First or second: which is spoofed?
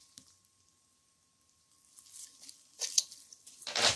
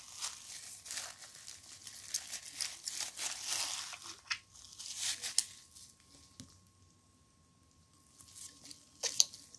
first